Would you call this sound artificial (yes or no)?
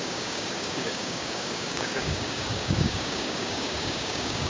yes